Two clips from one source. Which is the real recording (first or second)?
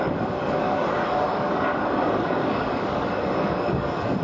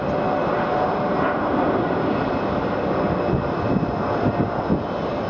second